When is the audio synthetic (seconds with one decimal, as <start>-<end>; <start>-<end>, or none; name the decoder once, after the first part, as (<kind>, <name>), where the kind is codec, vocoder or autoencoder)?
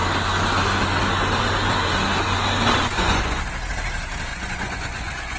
2.8-3.4 (vocoder, Vocos); 4.3-5.4